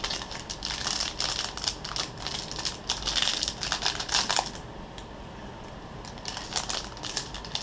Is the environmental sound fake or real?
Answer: real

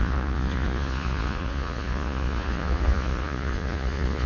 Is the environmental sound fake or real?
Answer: fake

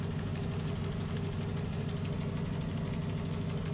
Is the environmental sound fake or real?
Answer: real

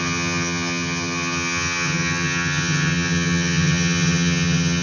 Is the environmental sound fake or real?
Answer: fake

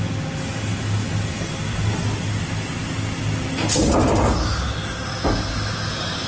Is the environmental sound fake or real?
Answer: real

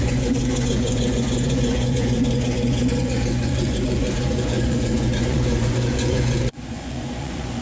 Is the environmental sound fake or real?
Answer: fake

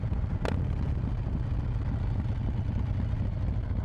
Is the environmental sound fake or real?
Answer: real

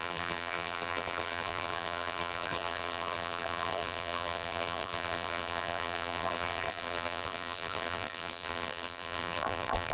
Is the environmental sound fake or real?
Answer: fake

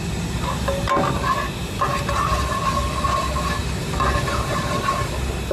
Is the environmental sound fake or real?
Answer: real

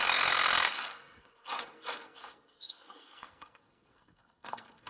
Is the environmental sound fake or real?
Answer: fake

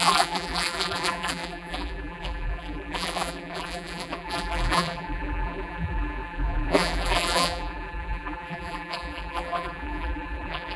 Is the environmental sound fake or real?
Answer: fake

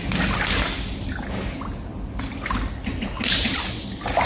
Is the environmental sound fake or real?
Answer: real